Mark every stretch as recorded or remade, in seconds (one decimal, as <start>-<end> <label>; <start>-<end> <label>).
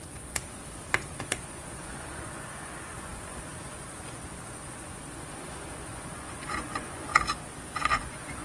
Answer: 0.0-0.6 remade; 0.6-1.2 recorded; 1.2-7.1 remade; 7.1-7.6 recorded; 7.6-8.4 remade